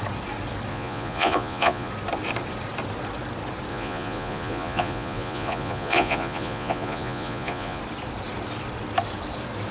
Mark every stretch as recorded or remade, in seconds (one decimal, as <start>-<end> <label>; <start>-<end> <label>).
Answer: 0.0-0.7 recorded; 0.7-1.9 remade; 1.9-3.7 recorded; 3.7-7.8 remade; 7.8-9.7 recorded